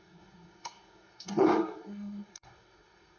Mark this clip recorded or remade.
remade